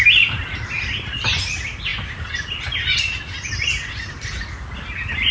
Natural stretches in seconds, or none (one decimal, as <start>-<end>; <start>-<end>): 0.0-5.3